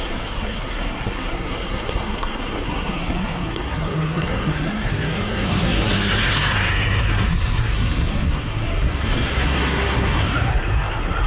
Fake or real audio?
fake